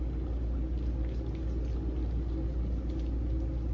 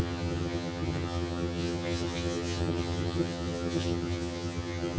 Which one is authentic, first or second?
first